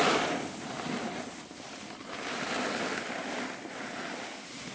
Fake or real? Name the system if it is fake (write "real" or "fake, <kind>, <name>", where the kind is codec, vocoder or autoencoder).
real